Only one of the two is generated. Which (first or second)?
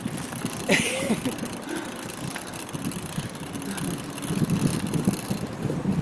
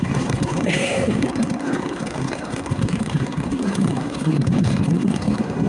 second